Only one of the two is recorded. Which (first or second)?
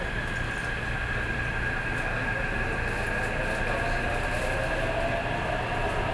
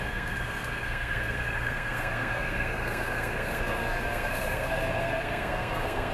first